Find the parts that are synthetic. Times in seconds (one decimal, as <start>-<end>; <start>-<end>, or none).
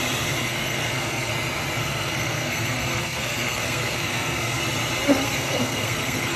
0.5-1.3; 1.8-4.6; 5.1-6.4